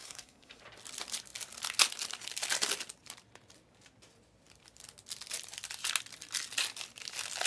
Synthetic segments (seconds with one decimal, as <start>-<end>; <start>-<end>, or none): 0.0-0.6